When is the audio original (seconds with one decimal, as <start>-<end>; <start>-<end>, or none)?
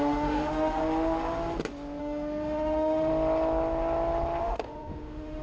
0.8-2.0; 3.1-4.4